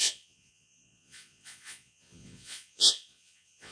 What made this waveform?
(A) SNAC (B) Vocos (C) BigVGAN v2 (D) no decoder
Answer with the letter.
B